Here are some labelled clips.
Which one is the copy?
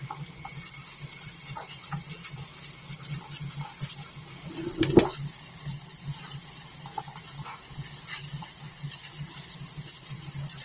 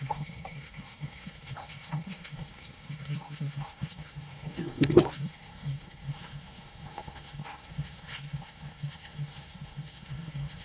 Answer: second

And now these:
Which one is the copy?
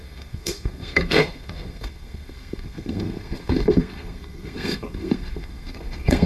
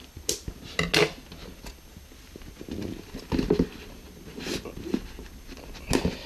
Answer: first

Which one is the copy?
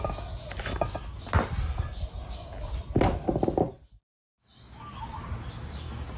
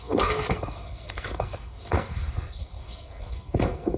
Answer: second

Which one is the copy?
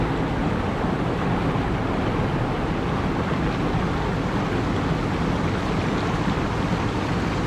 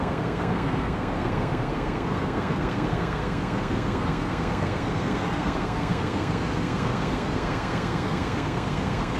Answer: second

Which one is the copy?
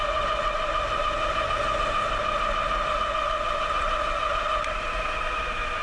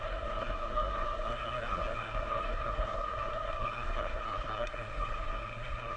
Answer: second